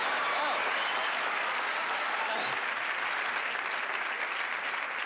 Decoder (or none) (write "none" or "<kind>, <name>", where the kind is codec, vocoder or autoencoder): none